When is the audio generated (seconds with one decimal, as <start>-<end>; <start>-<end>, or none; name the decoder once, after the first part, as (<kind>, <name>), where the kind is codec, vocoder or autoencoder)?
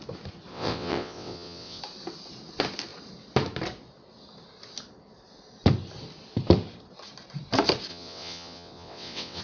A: 0.5-1.8 (vocoder, WaveNeXt); 7.9-9.4